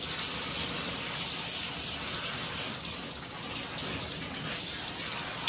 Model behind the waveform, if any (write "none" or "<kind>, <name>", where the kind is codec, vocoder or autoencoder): none